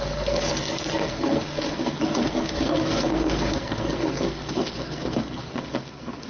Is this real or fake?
fake